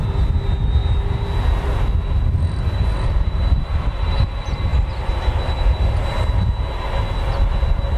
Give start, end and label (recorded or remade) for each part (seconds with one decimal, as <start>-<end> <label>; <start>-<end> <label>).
0.0-8.0 recorded